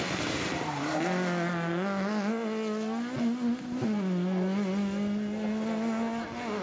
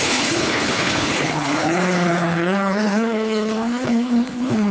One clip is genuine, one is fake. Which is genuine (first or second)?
first